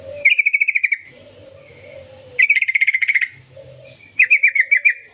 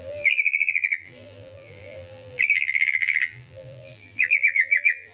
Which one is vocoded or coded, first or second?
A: second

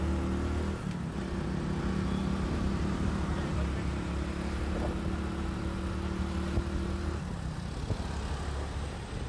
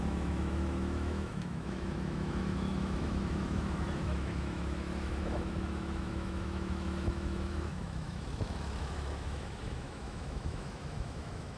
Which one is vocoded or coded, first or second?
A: second